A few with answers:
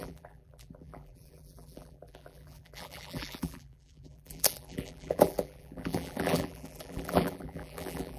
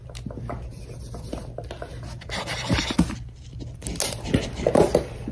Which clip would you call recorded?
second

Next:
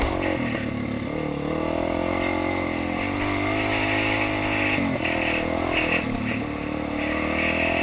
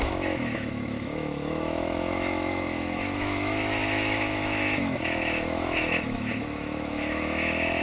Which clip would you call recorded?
first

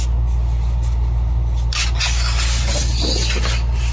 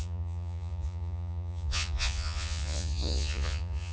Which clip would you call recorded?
first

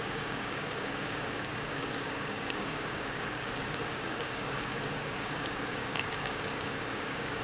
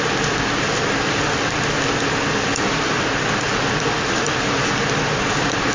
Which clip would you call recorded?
second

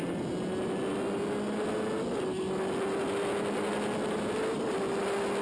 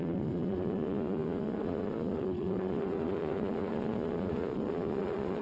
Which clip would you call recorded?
first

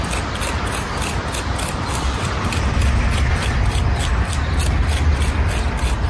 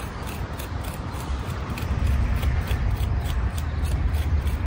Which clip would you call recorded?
first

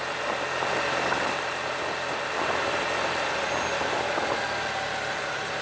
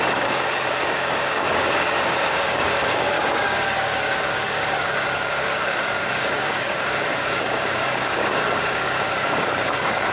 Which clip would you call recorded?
first